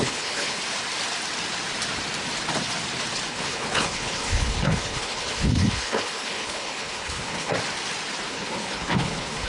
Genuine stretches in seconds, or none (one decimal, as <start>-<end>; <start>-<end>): 0.6-3.3; 7.5-8.3